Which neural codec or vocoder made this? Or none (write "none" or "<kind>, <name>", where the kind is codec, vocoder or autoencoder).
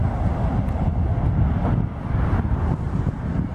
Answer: none